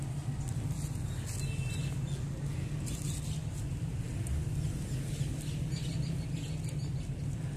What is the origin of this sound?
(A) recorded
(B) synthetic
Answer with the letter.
A